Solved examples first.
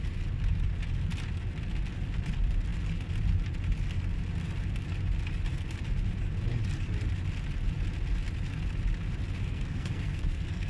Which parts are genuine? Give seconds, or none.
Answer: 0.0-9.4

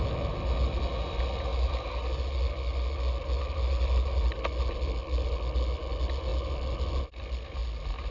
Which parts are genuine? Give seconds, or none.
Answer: 0.0-8.1

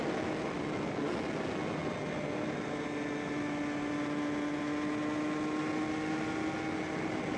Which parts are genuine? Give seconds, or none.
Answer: 0.0-7.4